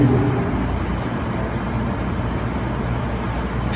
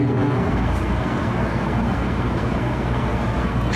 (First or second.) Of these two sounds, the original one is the first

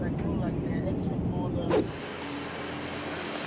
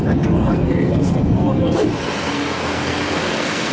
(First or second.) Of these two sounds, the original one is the first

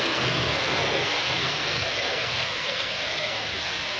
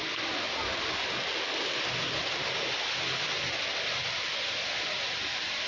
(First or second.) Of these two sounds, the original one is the second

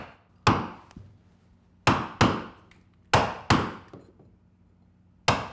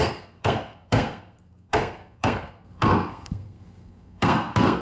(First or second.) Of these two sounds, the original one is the first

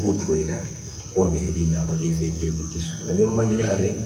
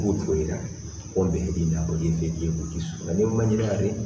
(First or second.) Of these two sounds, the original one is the second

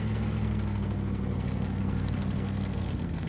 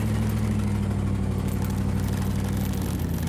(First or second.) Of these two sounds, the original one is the second